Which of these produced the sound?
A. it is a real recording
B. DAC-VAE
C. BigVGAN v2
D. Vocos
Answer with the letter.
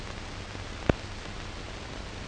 A